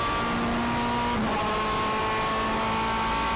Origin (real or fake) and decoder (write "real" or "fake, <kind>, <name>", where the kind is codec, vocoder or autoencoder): real